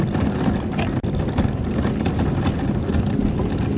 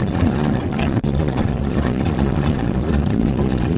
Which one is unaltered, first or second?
first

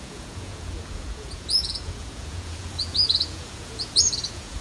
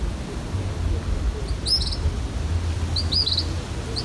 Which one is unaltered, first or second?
second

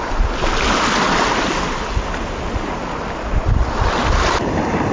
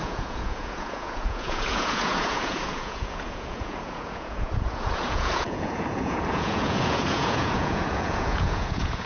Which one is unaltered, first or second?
first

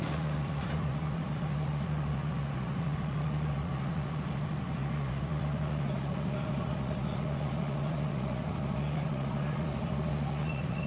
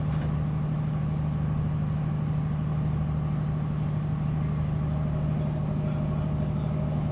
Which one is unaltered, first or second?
second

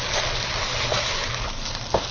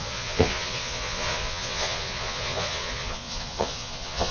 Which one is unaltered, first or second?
first